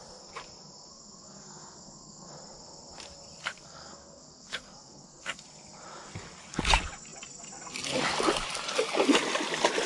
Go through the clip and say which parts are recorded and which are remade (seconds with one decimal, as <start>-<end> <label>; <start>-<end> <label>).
0.0-0.9 recorded; 0.9-2.3 remade; 2.3-3.4 recorded; 3.4-5.4 remade; 5.4-9.9 recorded